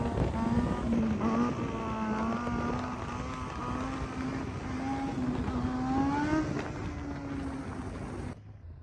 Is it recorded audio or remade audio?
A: recorded